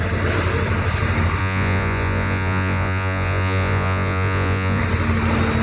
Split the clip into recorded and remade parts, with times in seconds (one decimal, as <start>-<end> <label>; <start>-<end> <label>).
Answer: 0.0-1.4 recorded; 1.4-4.8 remade; 4.8-5.6 recorded

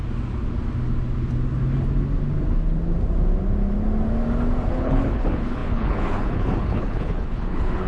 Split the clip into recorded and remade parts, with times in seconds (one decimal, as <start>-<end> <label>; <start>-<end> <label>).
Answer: 0.0-4.7 recorded; 4.7-7.9 remade

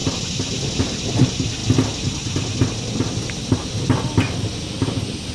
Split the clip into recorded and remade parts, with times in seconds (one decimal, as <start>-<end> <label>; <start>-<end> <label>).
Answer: 0.0-0.8 recorded; 0.8-1.6 remade; 1.6-4.8 recorded; 4.8-5.3 remade

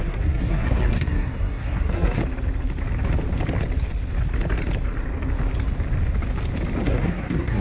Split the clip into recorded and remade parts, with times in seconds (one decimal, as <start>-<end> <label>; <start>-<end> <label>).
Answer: 0.0-2.2 remade; 2.2-6.8 recorded; 6.8-7.6 remade

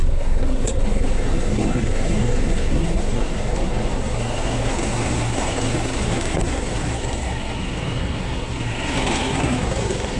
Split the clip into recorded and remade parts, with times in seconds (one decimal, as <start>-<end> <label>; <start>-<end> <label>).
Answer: 0.0-10.2 remade